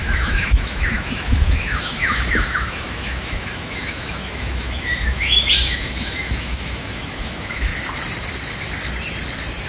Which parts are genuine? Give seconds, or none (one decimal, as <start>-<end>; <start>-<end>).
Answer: 7.7-9.7